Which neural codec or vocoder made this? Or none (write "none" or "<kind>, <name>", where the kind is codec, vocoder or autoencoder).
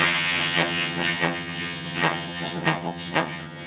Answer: vocoder, HiFi-GAN